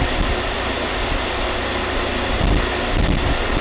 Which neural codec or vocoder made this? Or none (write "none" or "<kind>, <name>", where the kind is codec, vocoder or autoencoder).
none